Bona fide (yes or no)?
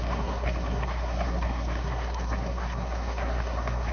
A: no